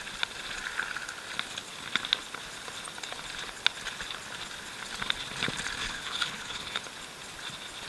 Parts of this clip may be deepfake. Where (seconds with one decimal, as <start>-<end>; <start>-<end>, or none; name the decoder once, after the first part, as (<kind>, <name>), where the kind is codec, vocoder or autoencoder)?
5.8-6.8 (codec, HILCodec)

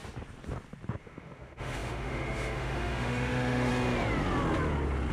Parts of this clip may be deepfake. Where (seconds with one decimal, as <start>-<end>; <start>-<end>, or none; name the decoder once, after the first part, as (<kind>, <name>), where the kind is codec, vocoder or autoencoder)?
1.0-3.7 (autoencoder, DAC-VAE)

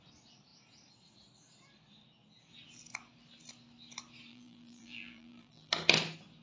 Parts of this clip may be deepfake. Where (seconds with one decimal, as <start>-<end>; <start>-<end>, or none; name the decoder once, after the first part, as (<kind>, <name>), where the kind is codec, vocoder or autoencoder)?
4.3-5.7 (vocoder, BigVGAN v2)